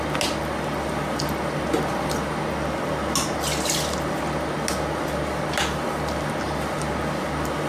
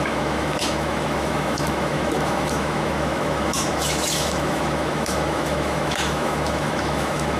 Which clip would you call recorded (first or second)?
first